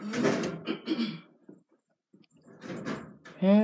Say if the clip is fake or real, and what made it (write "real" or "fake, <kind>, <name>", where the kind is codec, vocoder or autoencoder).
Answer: real